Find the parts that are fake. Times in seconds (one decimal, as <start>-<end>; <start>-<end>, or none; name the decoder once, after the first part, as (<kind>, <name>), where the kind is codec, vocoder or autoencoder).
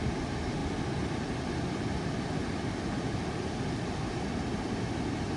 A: none